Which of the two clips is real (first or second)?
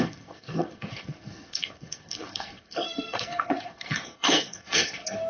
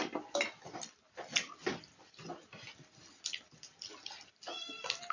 second